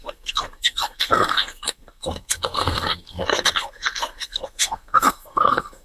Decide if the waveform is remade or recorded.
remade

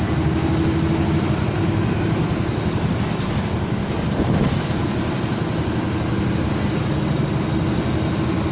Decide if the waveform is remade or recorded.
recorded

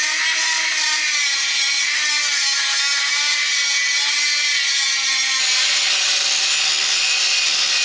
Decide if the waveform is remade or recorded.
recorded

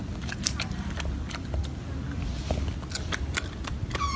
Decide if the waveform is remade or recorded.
recorded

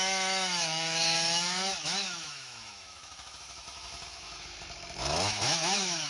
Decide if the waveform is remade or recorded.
remade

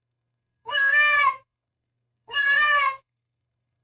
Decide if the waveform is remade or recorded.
remade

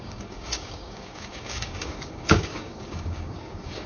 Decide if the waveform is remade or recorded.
remade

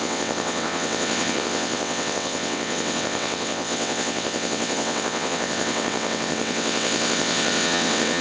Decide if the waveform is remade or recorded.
remade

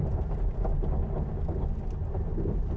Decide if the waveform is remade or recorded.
recorded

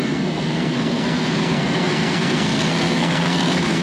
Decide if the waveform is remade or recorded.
remade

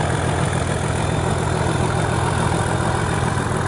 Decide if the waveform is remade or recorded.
recorded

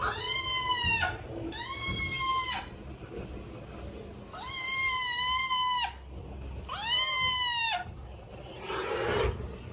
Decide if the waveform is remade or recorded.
recorded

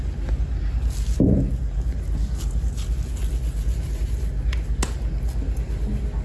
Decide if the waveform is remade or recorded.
recorded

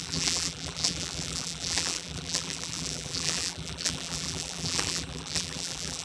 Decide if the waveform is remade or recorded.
remade